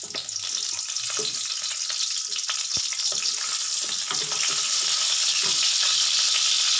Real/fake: real